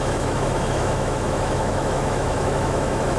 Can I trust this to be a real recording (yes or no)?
no